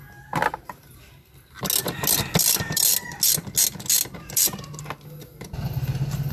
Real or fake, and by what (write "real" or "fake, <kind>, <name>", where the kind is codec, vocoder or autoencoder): real